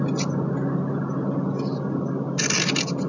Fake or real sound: real